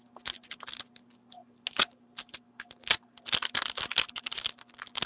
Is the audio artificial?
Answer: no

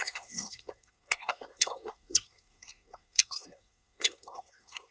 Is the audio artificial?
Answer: yes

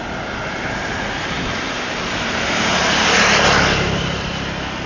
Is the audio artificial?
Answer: no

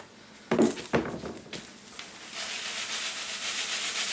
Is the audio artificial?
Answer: no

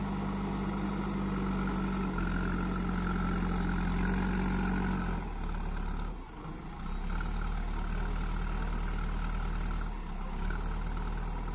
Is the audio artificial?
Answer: no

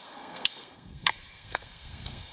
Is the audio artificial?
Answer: yes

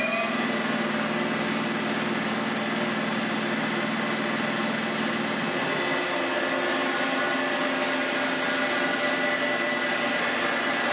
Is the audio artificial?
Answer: no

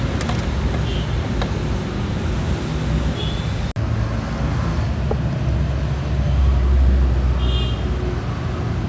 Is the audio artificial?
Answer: no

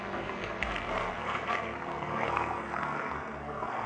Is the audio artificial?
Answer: yes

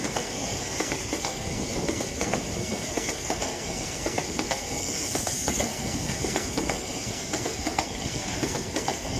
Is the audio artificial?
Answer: yes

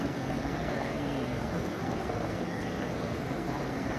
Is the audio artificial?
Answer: yes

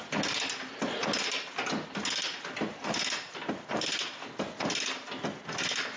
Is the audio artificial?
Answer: no